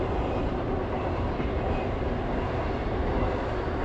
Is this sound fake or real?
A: real